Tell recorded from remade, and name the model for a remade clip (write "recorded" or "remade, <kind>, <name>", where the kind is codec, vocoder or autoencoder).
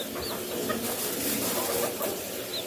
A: recorded